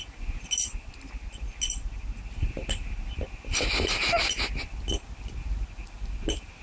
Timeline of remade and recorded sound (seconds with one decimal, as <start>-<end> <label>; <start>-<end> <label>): 0.0-6.6 recorded